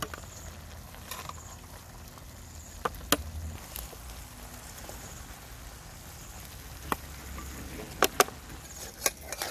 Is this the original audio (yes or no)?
yes